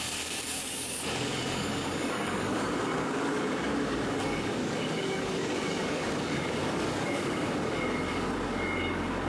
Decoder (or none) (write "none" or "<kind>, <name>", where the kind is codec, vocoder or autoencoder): codec, DAC